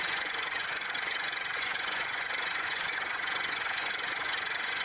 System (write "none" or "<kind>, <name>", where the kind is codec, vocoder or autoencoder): vocoder, Vocos